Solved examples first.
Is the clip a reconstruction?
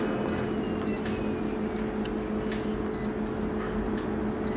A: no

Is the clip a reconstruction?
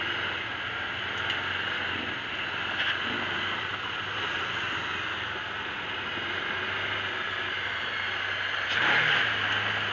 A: no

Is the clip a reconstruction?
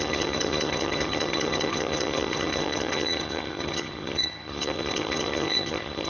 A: yes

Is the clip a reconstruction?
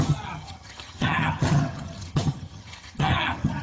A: yes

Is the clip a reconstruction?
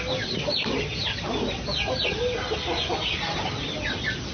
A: no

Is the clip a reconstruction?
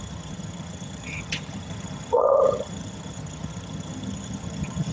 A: yes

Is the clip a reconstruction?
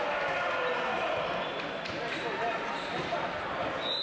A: no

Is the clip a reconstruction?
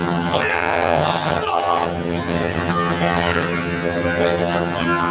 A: yes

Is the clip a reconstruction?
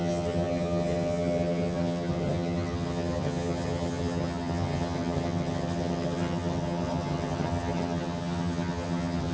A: yes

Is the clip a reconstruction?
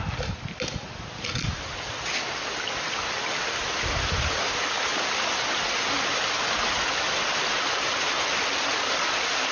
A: no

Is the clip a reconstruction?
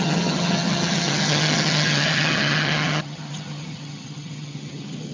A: yes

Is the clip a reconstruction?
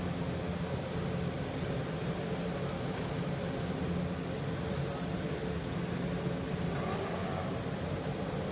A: no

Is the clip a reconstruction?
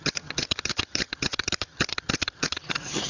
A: yes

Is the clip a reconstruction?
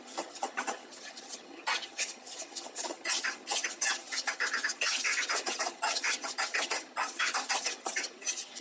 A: yes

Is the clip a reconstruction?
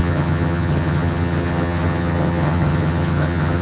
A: yes